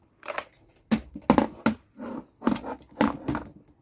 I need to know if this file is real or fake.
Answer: real